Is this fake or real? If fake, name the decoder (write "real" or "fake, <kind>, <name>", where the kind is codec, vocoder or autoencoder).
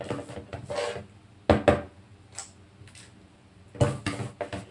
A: real